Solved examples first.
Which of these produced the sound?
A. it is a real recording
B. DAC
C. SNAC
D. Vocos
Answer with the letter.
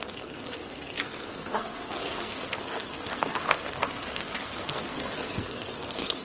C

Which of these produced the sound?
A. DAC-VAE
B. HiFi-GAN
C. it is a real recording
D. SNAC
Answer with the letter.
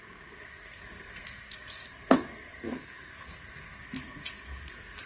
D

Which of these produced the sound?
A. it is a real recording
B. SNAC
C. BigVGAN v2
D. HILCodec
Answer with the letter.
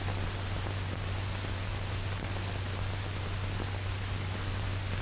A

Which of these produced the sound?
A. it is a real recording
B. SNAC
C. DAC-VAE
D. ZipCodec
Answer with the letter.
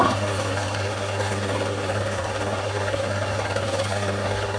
B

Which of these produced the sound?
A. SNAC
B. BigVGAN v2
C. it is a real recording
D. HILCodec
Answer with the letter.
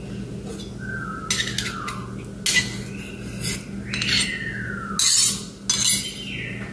C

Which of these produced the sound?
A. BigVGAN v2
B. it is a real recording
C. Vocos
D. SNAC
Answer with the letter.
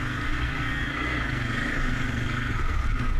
D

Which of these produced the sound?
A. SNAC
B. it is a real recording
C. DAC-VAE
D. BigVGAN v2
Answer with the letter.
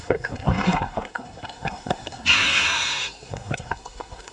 A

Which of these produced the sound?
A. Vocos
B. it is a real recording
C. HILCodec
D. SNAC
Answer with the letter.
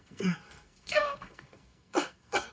D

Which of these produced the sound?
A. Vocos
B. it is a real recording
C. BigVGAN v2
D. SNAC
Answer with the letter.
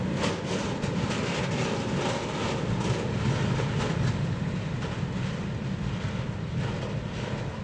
B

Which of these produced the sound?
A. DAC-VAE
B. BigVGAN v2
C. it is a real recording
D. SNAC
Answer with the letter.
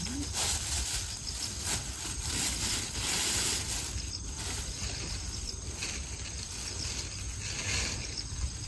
C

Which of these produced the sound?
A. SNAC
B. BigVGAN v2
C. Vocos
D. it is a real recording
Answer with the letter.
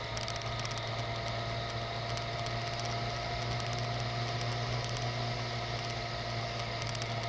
D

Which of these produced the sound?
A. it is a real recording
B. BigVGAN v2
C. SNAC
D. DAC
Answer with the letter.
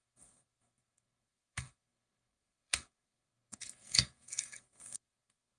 C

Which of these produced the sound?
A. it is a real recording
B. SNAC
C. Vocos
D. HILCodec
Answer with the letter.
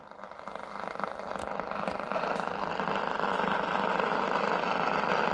A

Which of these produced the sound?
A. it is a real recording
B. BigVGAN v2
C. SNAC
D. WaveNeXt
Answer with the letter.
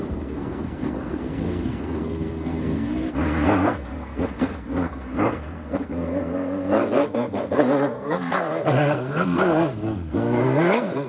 C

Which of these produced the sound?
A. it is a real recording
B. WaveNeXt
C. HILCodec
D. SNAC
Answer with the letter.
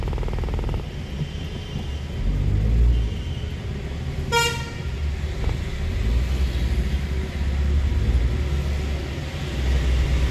A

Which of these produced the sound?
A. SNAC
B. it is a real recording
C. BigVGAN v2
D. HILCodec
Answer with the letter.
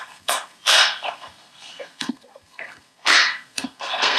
A